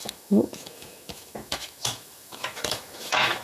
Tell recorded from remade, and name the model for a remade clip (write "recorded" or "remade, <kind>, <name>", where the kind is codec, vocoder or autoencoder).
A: remade, autoencoder, DAC-VAE